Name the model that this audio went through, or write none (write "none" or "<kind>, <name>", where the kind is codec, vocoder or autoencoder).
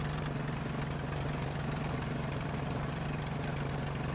none